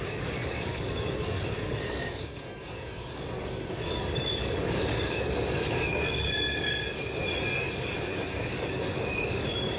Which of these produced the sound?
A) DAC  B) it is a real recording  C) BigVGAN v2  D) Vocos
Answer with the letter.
A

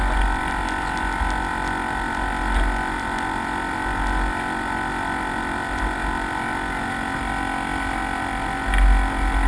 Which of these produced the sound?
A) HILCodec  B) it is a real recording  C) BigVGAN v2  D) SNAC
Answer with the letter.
B